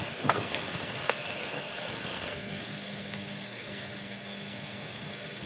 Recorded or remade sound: remade